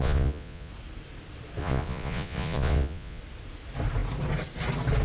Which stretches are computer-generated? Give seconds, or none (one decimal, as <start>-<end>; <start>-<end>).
0.0-0.7; 1.6-3.2